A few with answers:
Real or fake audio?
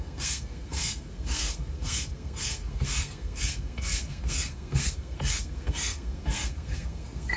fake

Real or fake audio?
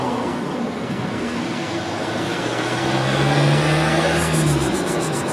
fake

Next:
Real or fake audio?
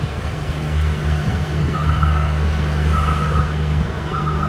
fake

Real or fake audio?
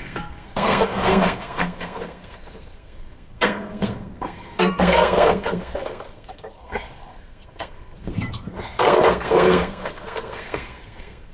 fake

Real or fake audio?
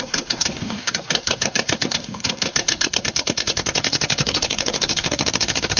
fake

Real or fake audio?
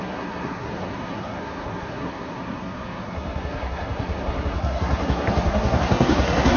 fake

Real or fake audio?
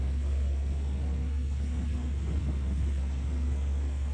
fake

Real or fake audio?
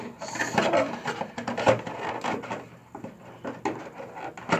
real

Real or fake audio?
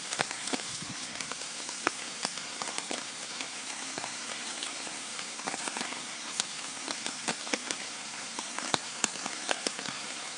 fake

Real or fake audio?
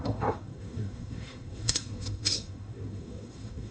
fake